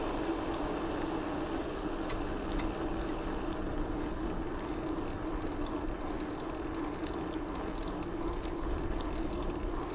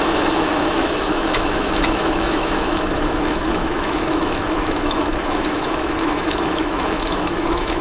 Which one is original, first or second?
first